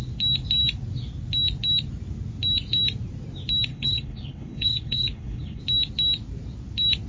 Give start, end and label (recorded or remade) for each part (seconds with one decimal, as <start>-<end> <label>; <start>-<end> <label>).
0.0-3.7 recorded; 3.7-5.6 remade; 5.6-7.1 recorded